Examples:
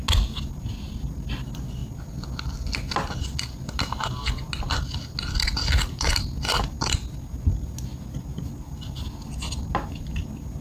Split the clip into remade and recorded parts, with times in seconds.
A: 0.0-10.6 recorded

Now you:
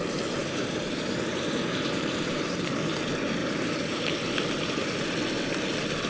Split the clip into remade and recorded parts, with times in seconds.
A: 0.0-0.4 recorded; 0.4-3.0 remade; 3.0-3.4 recorded; 3.4-4.0 remade; 4.0-6.1 recorded